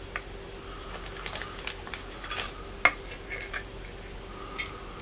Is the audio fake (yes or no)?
no